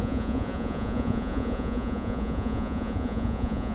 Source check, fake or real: fake